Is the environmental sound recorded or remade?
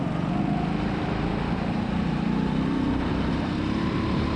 remade